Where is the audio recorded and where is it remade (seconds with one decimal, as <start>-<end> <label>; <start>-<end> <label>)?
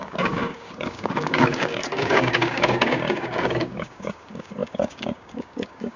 0.0-6.0 remade